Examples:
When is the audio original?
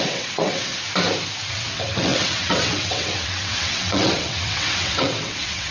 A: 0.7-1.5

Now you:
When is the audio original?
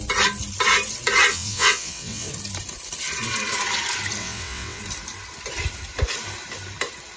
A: 0.0-1.3; 2.3-4.2; 4.8-7.2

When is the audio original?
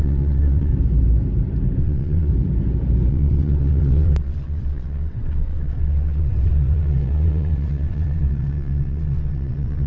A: 0.7-1.8; 2.3-3.1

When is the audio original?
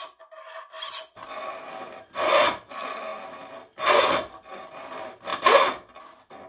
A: 0.0-6.5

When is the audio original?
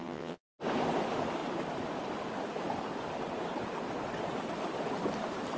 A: 0.5-5.6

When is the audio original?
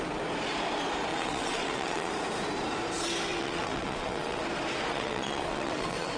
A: 0.0-1.1; 2.1-3.3; 4.4-4.9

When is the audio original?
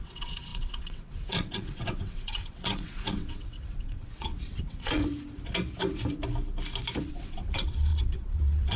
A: 5.0-7.1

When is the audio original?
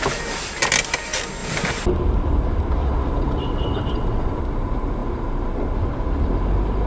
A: 0.0-2.8; 4.4-6.9